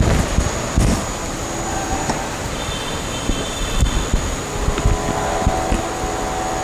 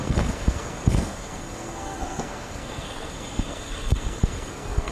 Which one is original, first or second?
first